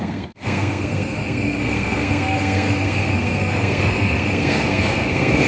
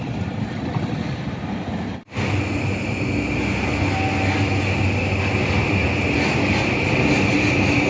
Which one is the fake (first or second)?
first